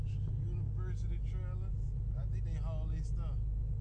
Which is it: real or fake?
real